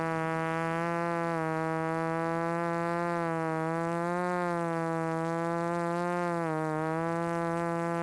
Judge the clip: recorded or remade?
recorded